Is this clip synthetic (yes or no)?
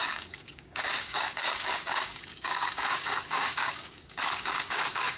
yes